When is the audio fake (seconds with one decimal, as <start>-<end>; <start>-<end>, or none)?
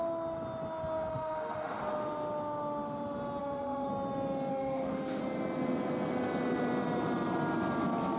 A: 1.1-1.8; 3.4-3.9; 4.5-5.2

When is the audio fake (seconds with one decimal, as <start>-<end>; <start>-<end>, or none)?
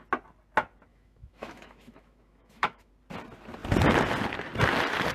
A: 0.9-2.9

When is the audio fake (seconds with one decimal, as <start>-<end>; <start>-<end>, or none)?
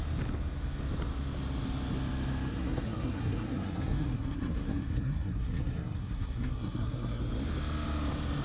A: 2.5-7.2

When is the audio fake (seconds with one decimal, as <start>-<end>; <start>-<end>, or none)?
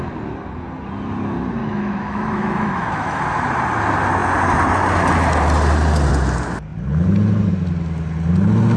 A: 1.6-3.2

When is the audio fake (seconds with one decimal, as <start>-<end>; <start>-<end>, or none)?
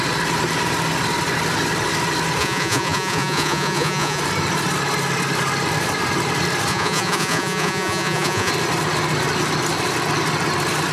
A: 2.4-4.2; 6.7-8.5